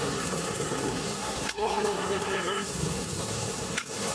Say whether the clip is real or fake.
fake